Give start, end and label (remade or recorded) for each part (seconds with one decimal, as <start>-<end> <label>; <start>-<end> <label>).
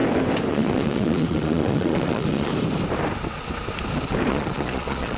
0.0-0.5 recorded; 0.5-2.5 remade; 2.5-4.3 recorded; 4.3-5.2 remade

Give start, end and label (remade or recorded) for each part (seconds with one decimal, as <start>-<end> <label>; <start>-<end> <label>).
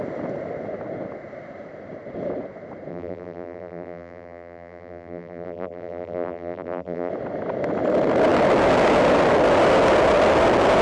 0.0-2.9 recorded; 2.9-7.1 remade; 7.1-10.8 recorded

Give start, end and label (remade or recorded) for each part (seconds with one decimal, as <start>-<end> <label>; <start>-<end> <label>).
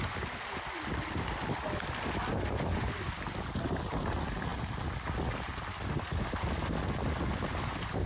0.0-8.1 recorded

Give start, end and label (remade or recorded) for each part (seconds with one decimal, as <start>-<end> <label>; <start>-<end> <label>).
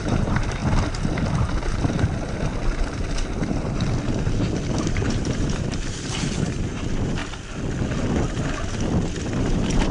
0.0-0.6 remade; 0.6-4.8 recorded; 4.8-7.2 remade; 7.2-9.4 recorded; 9.4-9.9 remade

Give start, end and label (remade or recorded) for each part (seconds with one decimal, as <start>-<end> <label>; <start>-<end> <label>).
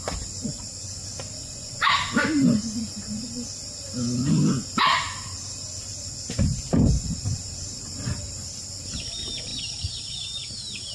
0.0-1.4 recorded; 1.4-3.3 remade; 3.3-10.9 recorded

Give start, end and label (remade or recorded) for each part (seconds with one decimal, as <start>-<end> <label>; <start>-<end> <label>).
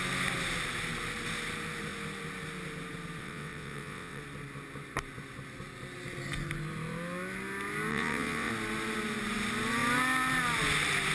0.0-3.2 recorded; 3.2-4.2 remade; 4.2-7.9 recorded; 7.9-8.5 remade; 8.5-11.1 recorded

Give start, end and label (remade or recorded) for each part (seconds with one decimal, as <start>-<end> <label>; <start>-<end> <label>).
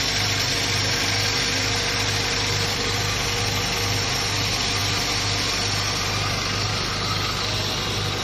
0.0-8.2 recorded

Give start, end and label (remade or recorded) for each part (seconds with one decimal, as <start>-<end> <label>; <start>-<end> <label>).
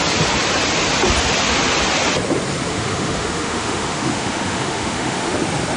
0.0-2.7 recorded; 2.7-5.3 remade; 5.3-5.8 recorded